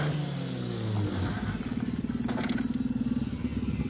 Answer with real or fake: real